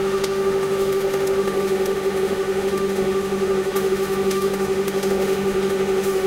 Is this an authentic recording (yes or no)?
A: no